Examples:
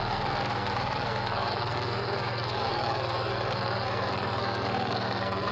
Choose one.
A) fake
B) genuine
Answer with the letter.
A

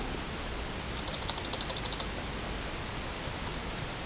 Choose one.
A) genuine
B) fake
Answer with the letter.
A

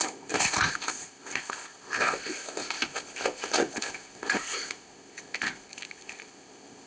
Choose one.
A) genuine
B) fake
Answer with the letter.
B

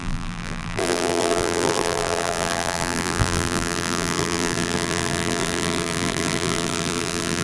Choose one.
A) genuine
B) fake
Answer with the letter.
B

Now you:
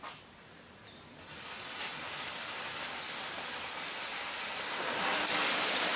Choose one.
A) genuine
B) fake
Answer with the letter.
A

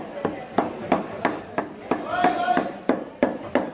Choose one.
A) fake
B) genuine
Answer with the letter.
B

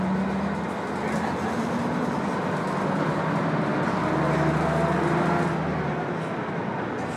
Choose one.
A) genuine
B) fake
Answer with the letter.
A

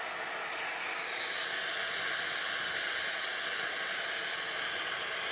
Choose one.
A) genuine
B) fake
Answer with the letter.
A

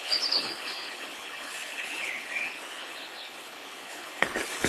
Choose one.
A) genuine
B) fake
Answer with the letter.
B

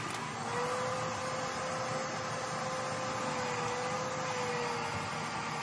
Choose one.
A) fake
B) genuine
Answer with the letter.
B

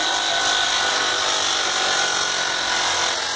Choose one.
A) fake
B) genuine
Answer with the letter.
B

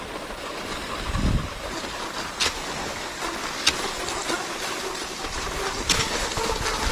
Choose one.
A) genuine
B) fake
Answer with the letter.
A